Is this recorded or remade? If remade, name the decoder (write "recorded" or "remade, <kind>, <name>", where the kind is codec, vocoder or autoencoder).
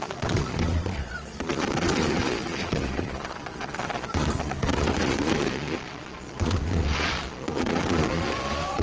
remade, vocoder, Vocos